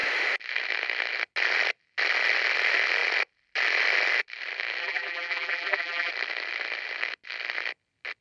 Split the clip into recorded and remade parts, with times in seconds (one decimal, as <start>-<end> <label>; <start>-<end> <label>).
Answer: 0.0-4.8 recorded; 4.8-6.1 remade; 6.1-8.2 recorded